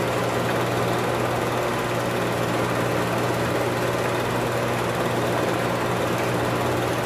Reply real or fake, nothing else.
real